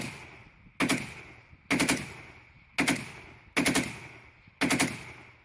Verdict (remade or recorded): recorded